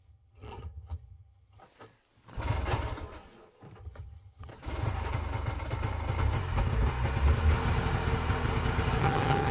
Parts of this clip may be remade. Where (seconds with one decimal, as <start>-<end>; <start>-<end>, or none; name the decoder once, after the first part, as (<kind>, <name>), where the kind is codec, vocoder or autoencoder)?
0.0-1.6 (vocoder, HiFi-GAN); 3.8-4.5; 9.0-9.5